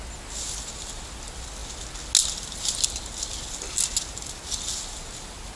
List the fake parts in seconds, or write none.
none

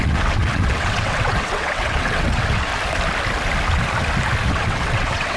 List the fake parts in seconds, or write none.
0.0-2.7 (vocoder, WaveNeXt); 4.5-5.4

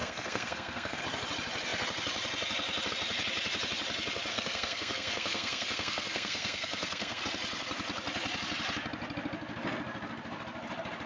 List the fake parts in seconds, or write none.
0.0-1.0 (codec, SNAC); 4.3-7.2

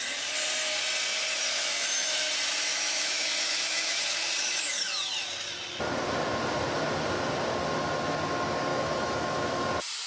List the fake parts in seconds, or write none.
1.1-2.3 (autoencoder, DAC-VAE); 2.7-4.9; 8.7-9.7

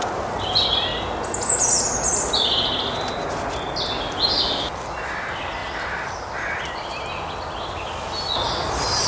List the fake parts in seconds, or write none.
none

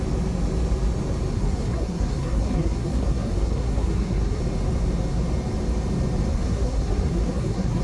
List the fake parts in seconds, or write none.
1.3-4.4 (codec, SNAC); 6.3-7.8